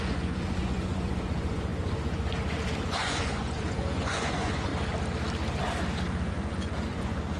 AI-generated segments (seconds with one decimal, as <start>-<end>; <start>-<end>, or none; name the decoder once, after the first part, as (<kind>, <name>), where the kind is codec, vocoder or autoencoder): 0.0-4.7 (vocoder, Vocos); 6.3-7.4